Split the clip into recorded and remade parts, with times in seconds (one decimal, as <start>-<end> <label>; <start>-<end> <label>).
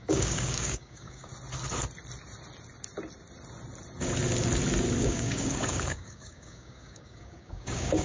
0.0-1.3 remade; 1.3-5.0 recorded; 5.0-8.0 remade